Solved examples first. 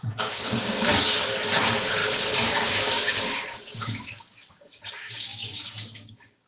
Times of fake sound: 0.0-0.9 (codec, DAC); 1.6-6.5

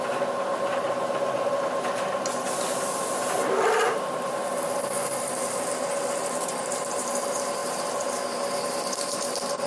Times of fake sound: none

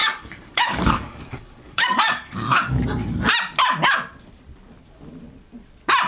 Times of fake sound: 0.0-2.8 (codec, DAC)

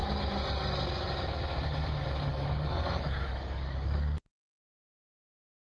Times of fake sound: 2.3-4.9 (codec, DAC)

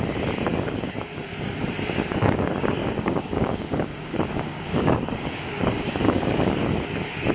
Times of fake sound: 0.5-1.2 (codec, DAC); 2.8-6.6